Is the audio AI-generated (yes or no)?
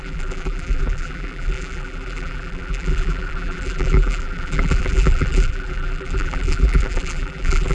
yes